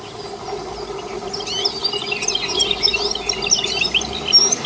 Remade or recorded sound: recorded